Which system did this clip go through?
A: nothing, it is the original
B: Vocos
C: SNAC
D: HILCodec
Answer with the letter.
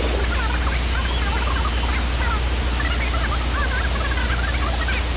A